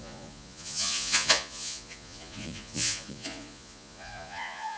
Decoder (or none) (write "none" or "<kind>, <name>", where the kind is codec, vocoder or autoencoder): vocoder, Vocos